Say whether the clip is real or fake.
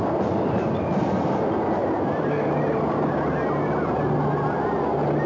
real